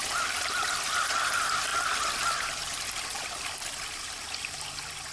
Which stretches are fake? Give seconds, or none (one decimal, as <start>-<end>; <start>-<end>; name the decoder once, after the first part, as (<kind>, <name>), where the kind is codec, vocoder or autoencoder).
none